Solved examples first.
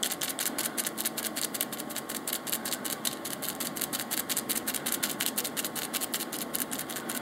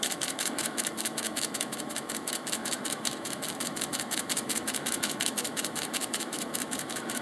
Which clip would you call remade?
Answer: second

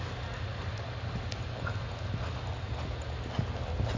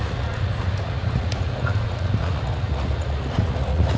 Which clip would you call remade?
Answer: second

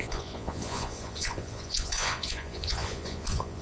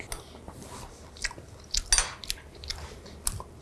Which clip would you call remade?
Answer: first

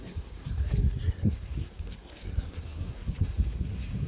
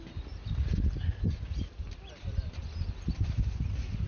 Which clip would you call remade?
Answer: first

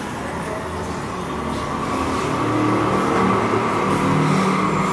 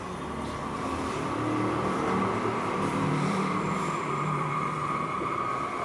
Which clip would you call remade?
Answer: second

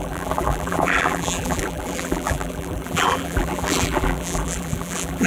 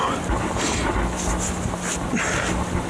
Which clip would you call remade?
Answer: first